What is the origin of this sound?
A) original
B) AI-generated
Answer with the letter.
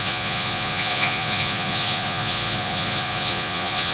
B